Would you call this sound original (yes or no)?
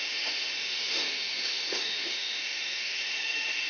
no